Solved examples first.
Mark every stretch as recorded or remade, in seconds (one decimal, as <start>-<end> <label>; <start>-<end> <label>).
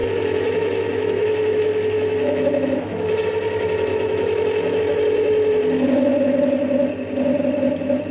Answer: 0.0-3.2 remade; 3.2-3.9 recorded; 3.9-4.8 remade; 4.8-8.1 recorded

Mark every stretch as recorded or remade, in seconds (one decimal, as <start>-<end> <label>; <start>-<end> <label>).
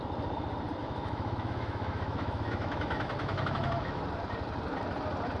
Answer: 0.0-0.8 recorded; 0.8-4.0 remade; 4.0-5.4 recorded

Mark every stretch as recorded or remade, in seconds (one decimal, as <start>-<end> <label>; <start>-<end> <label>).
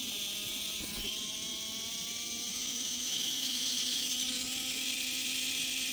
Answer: 0.0-2.5 recorded; 2.5-4.1 remade; 4.1-5.9 recorded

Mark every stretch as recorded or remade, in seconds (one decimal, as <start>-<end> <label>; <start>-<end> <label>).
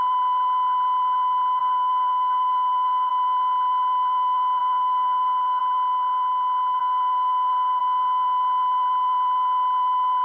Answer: 0.0-1.6 recorded; 1.6-3.1 remade; 3.1-4.6 recorded; 4.6-5.6 remade; 5.6-6.8 recorded; 6.8-7.8 remade; 7.8-10.2 recorded